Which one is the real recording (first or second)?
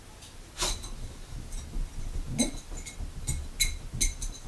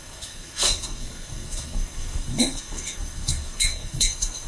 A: first